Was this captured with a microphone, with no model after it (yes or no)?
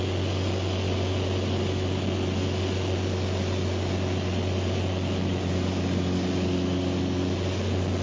yes